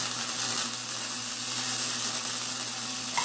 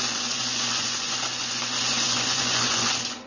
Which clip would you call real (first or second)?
first